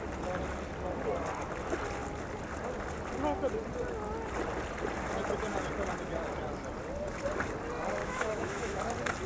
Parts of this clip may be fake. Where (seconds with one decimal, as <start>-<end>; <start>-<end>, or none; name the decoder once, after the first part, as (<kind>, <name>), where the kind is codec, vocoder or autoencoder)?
8.0-8.8 (autoencoder, DAC-VAE)